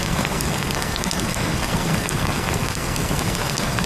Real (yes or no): no